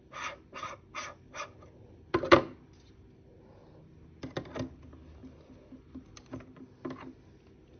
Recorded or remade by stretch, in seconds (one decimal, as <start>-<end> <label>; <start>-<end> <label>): 0.0-7.8 recorded